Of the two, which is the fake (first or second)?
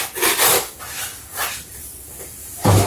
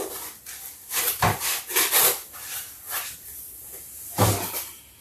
second